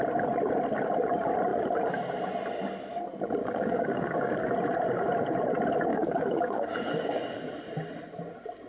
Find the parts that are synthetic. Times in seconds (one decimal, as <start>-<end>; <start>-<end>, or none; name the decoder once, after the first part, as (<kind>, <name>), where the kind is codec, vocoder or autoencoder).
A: 3.4-4.3 (codec, DAC); 5.9-7.2

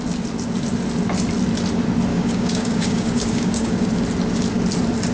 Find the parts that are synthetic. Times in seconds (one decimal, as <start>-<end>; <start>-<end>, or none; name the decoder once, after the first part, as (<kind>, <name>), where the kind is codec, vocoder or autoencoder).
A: 2.1-3.9 (codec, DAC)

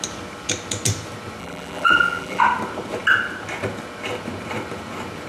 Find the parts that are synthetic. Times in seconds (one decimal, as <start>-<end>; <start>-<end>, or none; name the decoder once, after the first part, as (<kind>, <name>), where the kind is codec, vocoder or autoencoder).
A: 1.4-2.4 (vocoder, BigVGAN v2)

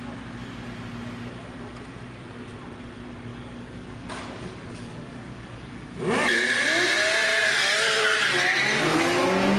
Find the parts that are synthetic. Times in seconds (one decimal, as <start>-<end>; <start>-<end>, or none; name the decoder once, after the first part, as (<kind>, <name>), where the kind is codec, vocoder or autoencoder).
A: 3.3-6.0 (codec, DAC)

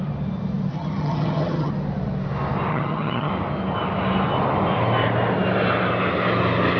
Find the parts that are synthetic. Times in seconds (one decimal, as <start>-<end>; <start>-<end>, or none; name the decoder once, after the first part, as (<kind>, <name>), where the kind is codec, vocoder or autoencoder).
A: 0.7-1.7 (vocoder, HiFi-GAN); 2.7-3.3

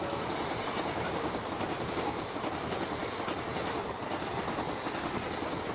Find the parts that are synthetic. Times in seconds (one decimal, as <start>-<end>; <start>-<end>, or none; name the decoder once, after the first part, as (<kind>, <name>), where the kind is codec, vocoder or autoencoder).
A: none

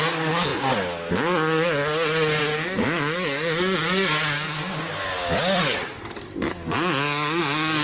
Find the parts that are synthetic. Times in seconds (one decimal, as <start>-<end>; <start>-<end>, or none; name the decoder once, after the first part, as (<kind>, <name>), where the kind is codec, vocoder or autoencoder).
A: none